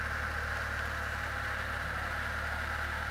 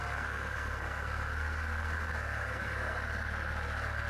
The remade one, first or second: second